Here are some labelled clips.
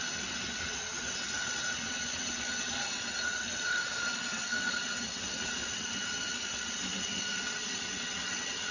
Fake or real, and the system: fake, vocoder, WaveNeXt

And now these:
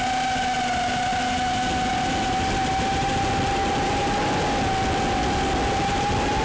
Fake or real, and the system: real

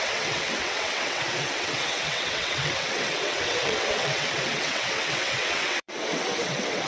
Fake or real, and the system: fake, vocoder, WaveNeXt